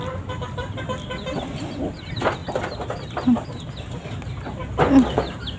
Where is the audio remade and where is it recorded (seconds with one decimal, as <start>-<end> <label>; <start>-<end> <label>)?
0.0-5.6 recorded